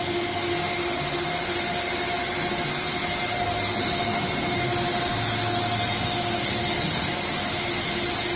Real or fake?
real